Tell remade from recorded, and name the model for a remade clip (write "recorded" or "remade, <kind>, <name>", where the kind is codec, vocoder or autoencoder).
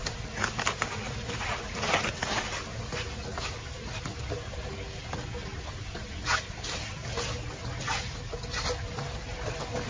recorded